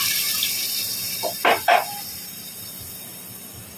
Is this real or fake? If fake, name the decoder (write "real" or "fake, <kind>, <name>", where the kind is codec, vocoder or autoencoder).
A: real